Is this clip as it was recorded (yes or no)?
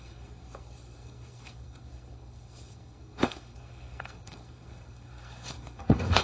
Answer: no